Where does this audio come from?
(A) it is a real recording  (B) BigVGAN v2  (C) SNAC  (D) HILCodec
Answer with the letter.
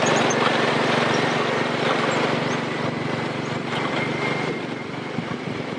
B